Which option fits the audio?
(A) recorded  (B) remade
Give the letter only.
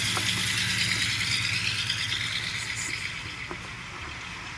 A